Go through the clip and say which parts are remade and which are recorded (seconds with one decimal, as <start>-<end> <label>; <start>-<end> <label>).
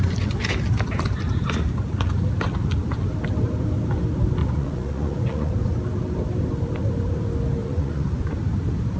0.0-4.4 recorded; 4.4-5.5 remade; 5.5-7.6 recorded; 7.6-8.3 remade; 8.3-9.0 recorded